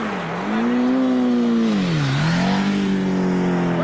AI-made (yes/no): no